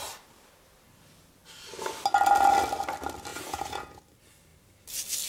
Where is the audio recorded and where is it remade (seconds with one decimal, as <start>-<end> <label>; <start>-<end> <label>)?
0.0-3.3 recorded; 3.3-4.0 remade; 4.0-5.3 recorded